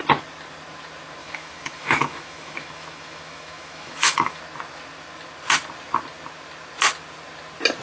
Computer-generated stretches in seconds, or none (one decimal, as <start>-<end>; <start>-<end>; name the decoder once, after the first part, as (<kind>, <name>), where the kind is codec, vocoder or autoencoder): 1.2-4.4 (autoencoder, DAC-VAE)